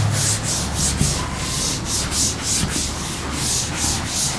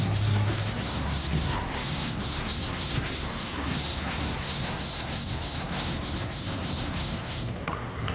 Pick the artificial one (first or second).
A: second